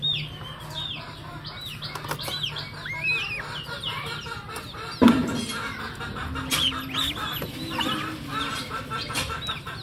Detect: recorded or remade recorded